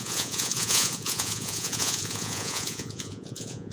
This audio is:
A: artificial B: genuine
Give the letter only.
A